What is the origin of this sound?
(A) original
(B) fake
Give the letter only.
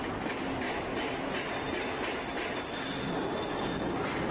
A